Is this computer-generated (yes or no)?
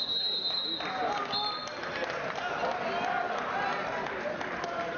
no